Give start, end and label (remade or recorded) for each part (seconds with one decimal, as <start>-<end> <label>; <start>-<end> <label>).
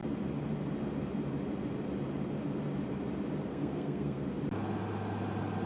0.0-3.5 recorded; 3.5-4.2 remade; 4.2-5.7 recorded